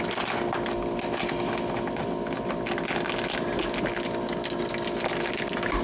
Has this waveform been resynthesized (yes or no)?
no